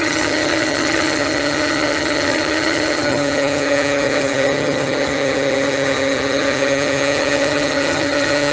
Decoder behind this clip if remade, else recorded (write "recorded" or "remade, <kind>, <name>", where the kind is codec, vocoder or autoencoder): remade, vocoder, HiFi-GAN